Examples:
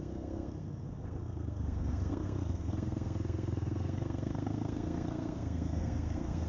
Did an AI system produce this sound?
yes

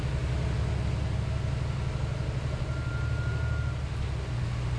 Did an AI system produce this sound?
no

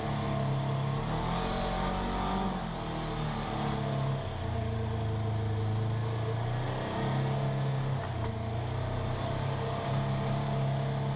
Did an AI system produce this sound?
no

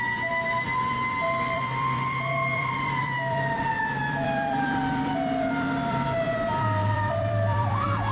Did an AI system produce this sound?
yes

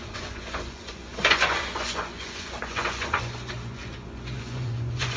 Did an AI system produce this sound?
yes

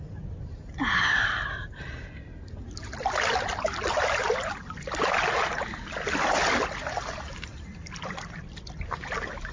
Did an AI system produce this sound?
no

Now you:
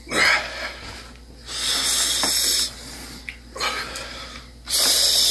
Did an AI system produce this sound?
no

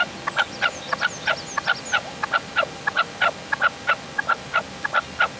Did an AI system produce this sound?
no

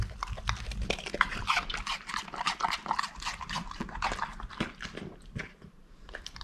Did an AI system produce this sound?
no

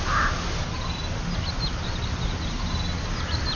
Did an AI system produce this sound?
no